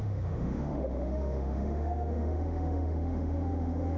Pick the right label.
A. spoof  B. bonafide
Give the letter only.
A